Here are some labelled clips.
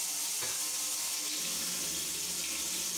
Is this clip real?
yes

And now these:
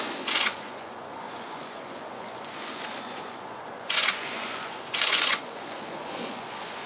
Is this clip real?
no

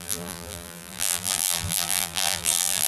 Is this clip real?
no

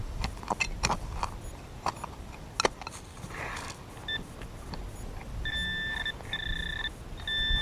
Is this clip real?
yes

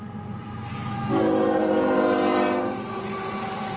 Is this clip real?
yes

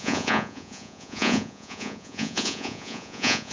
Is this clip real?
no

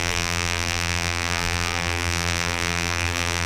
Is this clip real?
no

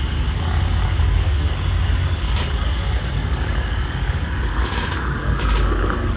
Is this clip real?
no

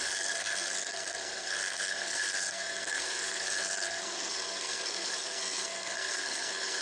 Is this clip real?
no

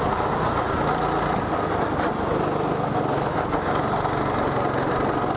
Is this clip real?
yes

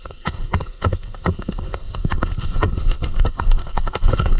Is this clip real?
no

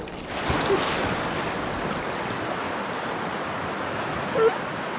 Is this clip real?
yes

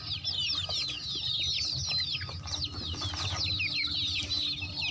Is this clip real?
yes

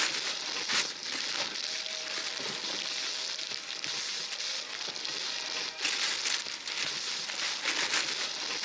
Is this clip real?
yes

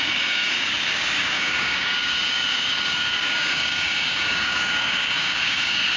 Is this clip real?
no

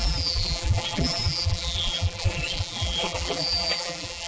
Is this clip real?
no